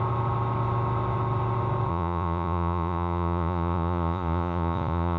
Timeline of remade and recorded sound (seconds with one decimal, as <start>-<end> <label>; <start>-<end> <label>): 0.0-1.9 recorded; 1.9-5.2 remade

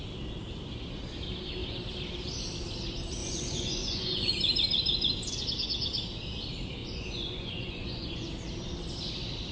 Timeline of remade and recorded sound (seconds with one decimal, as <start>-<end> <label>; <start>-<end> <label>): 0.0-3.2 recorded; 3.2-4.3 remade; 4.3-6.8 recorded; 6.8-8.3 remade; 8.3-9.5 recorded

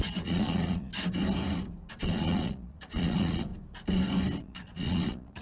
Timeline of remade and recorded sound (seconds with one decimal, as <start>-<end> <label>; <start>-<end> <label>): 0.0-0.9 remade; 0.9-1.9 recorded; 1.9-3.5 remade; 3.5-4.4 recorded; 4.4-5.4 remade